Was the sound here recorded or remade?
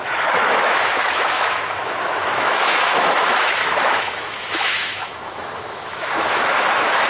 remade